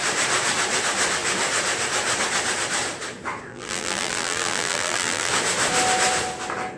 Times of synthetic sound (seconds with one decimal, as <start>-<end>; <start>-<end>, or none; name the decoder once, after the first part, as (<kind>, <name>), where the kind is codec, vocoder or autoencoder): 3.5-5.3 (vocoder, BigVGAN v2)